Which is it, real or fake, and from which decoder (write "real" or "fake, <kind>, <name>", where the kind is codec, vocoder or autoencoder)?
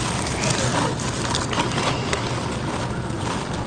real